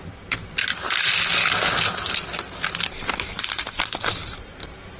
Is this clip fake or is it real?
real